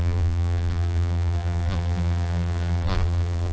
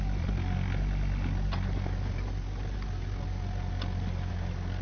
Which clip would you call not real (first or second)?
first